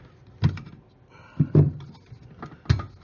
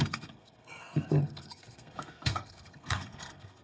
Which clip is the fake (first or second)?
second